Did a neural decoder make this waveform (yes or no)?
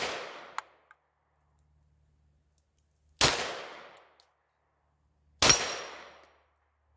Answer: no